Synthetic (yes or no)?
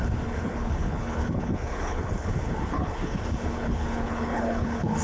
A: yes